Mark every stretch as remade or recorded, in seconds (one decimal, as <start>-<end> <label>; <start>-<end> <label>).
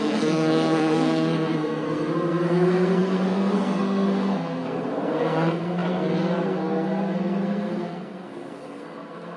0.0-9.4 remade